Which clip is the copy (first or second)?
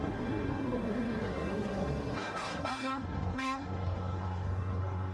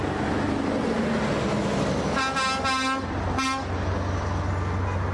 first